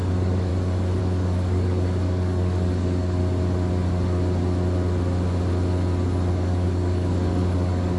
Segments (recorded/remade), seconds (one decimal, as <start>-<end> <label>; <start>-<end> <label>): 0.0-0.5 remade; 0.5-1.0 recorded; 1.0-3.2 remade; 3.2-6.3 recorded; 6.3-8.0 remade